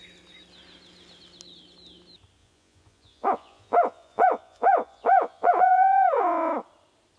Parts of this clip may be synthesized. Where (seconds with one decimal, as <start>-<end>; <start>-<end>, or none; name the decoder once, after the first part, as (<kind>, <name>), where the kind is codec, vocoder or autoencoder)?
2.4-6.5 (vocoder, Vocos)